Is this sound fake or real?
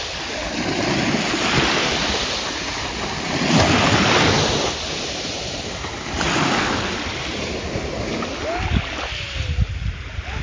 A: real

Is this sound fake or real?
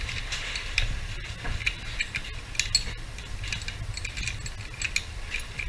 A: real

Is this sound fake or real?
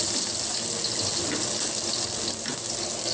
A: real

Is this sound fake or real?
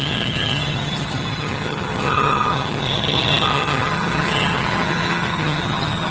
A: fake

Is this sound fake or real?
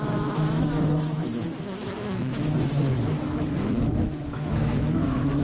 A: fake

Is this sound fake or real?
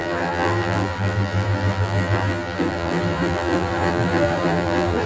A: fake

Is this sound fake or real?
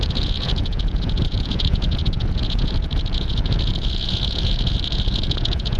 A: fake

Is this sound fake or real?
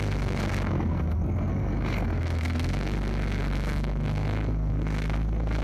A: fake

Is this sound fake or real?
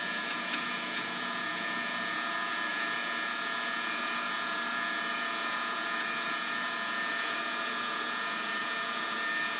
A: fake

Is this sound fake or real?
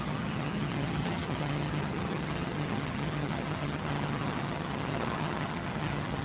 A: fake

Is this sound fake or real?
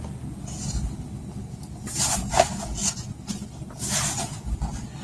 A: real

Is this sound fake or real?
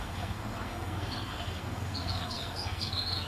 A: fake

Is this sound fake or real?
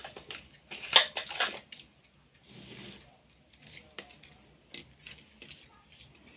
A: real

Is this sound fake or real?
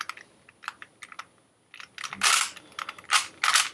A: real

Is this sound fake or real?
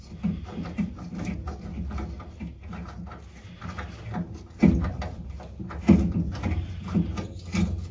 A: real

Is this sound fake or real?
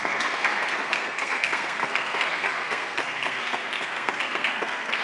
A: fake